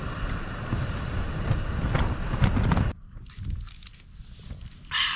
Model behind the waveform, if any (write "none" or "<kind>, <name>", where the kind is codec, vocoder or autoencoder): none